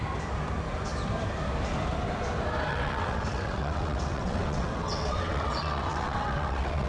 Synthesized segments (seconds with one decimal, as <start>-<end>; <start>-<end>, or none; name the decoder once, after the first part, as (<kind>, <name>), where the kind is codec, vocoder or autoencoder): 2.7-6.9 (vocoder, WaveNeXt)